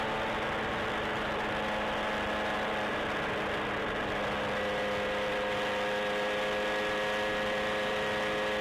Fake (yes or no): no